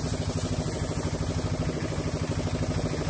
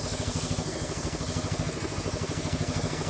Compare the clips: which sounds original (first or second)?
first